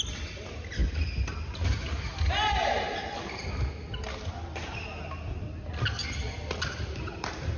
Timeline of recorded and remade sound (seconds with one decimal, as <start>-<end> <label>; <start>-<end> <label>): 0.0-7.6 recorded